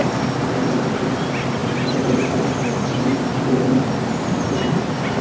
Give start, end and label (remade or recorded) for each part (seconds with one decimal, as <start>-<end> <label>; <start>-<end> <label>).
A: 0.0-5.2 recorded